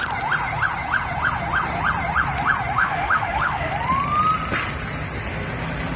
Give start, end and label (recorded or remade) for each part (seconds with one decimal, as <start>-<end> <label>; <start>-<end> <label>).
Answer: 0.0-2.8 recorded; 2.8-3.7 remade; 3.7-6.0 recorded